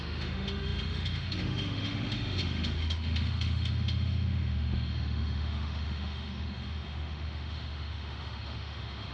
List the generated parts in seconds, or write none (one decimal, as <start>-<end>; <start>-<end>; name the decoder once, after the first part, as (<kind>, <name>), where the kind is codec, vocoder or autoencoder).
0.0-9.1 (autoencoder, DAC-VAE)